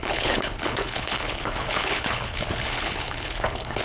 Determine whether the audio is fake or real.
fake